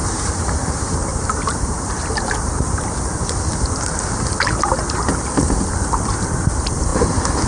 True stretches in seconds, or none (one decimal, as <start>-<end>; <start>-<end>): 0.6-1.1; 2.5-7.5

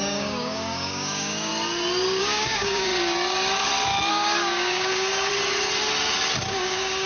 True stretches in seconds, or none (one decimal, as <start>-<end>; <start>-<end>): 1.5-2.2; 2.9-4.1; 5.3-6.5

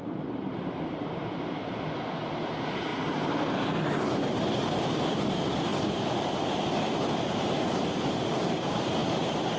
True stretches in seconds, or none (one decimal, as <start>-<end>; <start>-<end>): 2.9-4.1

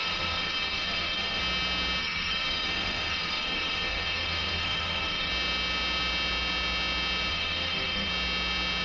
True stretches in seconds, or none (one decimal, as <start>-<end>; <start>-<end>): 1.4-2.0; 5.3-7.3; 8.1-8.8

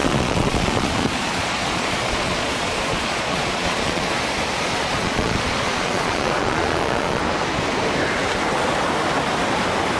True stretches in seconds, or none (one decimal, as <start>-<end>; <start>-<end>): 4.2-4.7; 7.2-10.0

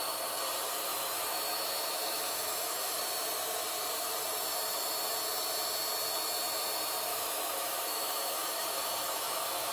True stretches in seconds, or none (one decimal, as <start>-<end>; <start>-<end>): 0.0-0.9; 3.0-7.1

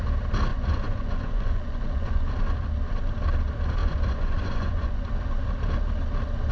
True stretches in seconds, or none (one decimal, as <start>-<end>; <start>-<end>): 0.0-0.5; 2.3-3.8; 5.0-6.5

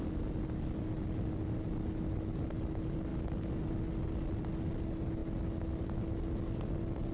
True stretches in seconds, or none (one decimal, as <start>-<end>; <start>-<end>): 0.0-7.1